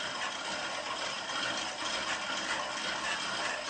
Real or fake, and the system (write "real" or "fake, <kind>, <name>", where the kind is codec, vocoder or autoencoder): real